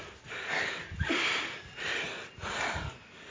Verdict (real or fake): real